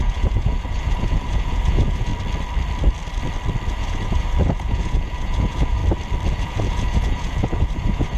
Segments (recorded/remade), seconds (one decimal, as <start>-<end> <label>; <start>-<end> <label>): 0.0-2.1 remade; 2.1-3.7 recorded; 3.7-5.8 remade; 5.8-6.3 recorded; 6.3-8.2 remade